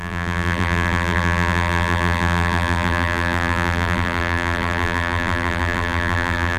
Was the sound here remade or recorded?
remade